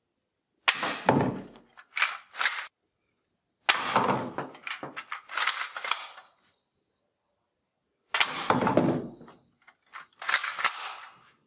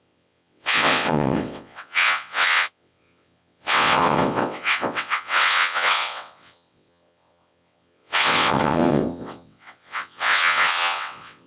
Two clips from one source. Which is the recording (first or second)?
first